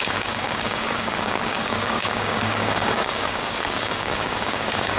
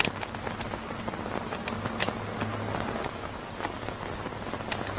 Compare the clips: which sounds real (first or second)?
second